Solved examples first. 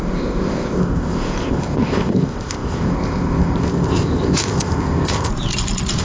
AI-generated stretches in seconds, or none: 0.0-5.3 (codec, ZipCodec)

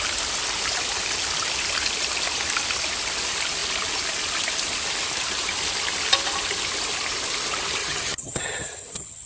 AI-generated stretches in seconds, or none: 7.8-9.3 (vocoder, HiFi-GAN)